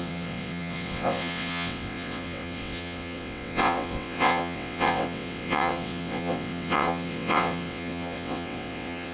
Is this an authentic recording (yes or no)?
no